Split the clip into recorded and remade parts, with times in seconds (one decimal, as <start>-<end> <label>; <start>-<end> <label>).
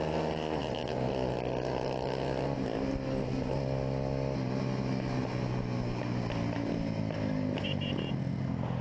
0.0-0.6 recorded; 0.6-1.1 remade; 1.1-8.8 recorded